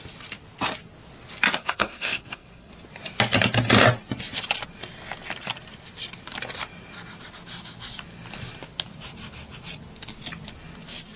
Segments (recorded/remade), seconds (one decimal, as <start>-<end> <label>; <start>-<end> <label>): 0.0-1.6 recorded; 1.6-2.7 remade; 2.7-11.2 recorded